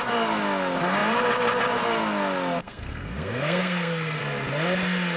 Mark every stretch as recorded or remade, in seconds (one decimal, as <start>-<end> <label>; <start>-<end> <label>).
0.0-2.6 recorded; 2.6-4.2 remade; 4.2-5.2 recorded